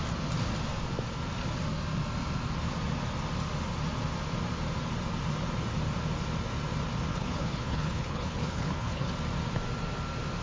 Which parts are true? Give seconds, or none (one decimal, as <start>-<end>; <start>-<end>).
0.0-7.1; 9.1-10.4